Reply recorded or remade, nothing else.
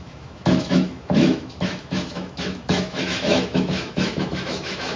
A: remade